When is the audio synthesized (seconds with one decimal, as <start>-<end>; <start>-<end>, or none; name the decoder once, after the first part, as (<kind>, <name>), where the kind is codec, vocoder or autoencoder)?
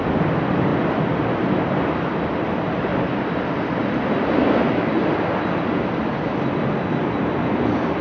0.0-0.7 (vocoder, BigVGAN v2); 2.0-2.9; 4.8-8.0